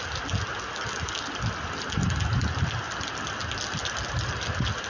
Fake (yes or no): no